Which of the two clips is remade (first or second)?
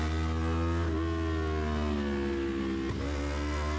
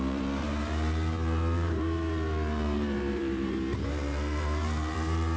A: second